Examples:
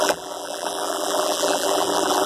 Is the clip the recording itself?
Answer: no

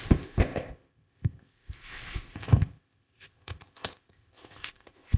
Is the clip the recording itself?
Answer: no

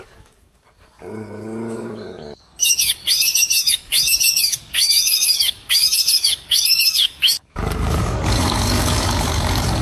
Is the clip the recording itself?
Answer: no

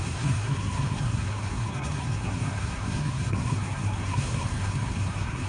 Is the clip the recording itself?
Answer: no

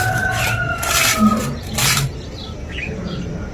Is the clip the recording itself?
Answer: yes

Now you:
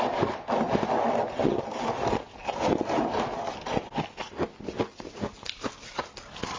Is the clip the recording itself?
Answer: yes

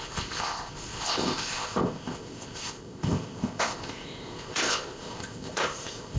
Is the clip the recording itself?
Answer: no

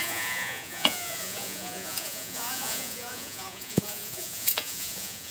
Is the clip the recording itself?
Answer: no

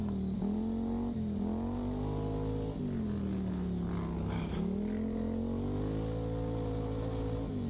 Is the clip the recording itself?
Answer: yes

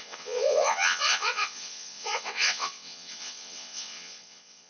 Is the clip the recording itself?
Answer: no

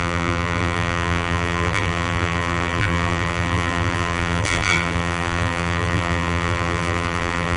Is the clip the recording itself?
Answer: no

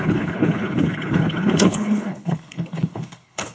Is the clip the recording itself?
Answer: no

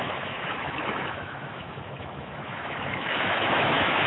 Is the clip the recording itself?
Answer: no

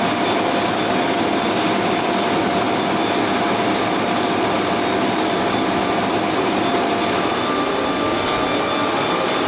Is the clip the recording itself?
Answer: yes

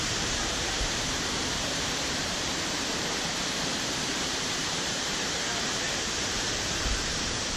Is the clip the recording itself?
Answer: no